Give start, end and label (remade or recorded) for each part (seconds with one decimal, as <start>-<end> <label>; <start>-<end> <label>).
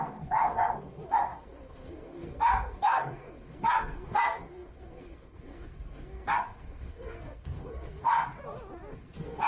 0.0-8.1 remade; 8.1-8.9 recorded; 8.9-9.5 remade